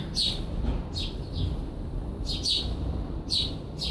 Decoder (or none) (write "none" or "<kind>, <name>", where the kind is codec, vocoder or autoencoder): none